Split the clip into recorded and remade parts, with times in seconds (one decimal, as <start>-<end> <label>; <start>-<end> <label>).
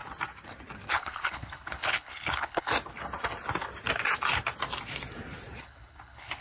0.0-0.9 recorded; 0.9-2.7 remade; 2.7-5.6 recorded; 5.6-6.4 remade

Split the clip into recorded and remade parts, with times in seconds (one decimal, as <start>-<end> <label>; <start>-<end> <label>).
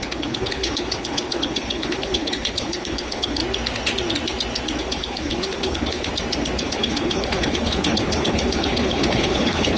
0.0-3.4 remade; 3.4-4.8 recorded; 4.8-6.1 remade; 6.1-6.6 recorded; 6.6-9.8 remade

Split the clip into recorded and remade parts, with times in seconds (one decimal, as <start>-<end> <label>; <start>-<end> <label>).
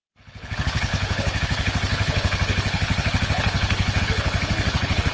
0.0-5.1 remade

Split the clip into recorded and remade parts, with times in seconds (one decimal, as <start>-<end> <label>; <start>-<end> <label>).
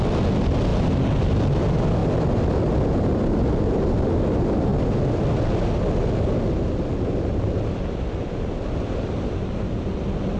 0.0-10.4 recorded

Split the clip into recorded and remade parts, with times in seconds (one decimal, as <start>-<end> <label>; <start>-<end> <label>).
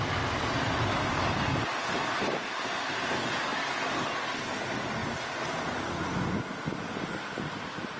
0.0-8.0 recorded